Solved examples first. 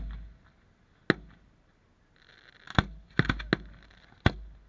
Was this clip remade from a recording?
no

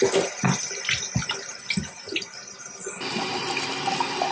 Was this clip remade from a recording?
no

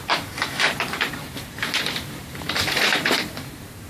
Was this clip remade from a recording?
yes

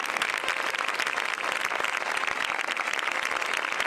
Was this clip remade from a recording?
no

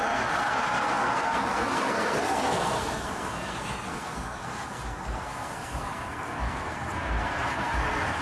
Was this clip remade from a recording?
yes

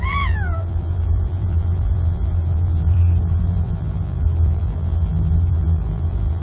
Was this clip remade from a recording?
yes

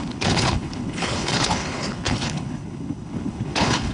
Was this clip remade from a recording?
yes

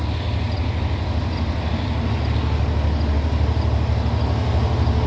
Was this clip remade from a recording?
no